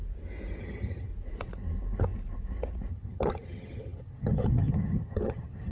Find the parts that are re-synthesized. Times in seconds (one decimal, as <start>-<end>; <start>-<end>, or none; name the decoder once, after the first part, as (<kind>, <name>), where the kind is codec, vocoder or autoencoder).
0.6-1.1 (vocoder, HiFi-GAN); 2.9-5.7